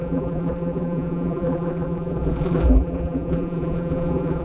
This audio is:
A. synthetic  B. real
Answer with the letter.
A